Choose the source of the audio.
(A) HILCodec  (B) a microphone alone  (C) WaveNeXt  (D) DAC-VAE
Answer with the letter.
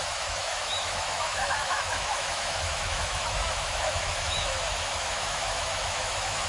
D